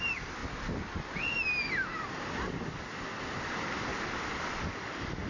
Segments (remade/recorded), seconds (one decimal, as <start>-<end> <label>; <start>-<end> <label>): 0.0-5.3 recorded